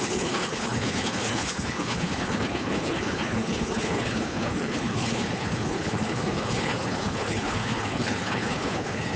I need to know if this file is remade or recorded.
remade